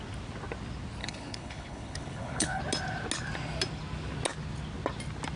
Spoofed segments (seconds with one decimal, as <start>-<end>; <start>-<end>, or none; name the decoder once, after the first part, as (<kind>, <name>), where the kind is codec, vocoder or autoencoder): 1.0-2.6 (codec, HILCodec)